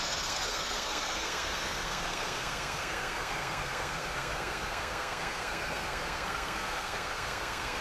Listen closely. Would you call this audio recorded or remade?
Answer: remade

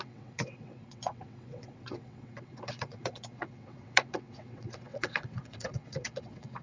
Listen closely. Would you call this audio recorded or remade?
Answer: remade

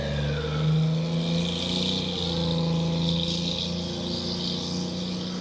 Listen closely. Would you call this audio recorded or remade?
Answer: recorded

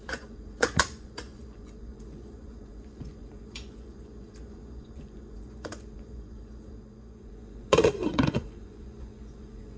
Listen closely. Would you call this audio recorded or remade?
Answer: remade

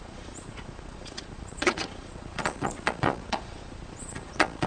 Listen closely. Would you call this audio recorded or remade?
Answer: remade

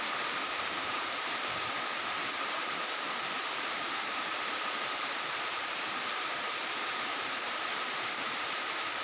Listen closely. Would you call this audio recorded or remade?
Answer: remade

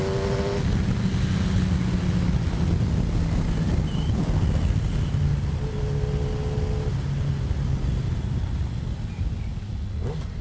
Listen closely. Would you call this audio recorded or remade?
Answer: recorded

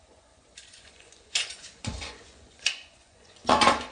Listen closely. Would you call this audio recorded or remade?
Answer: remade